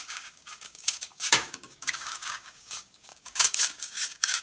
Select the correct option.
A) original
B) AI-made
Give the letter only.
B